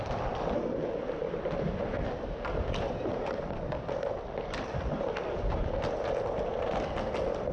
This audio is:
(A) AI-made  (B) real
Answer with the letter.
B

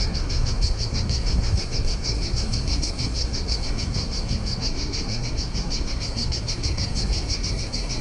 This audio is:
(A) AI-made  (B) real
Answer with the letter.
A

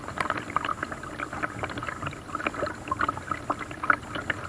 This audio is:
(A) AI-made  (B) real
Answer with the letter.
B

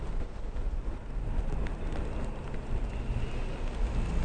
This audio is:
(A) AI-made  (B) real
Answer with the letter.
B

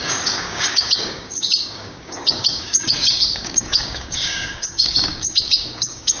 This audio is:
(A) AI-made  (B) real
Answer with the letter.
A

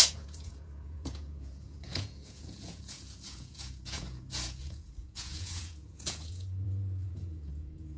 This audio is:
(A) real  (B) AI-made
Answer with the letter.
B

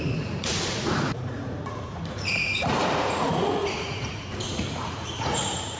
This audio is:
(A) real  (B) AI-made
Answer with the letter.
B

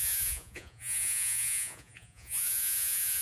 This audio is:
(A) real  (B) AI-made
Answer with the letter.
B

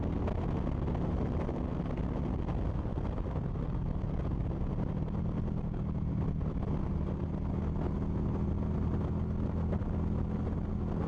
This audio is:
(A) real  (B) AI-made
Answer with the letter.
A